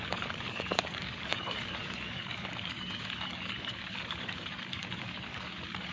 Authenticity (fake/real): fake